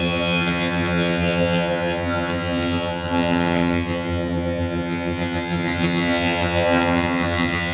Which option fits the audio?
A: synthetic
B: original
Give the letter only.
A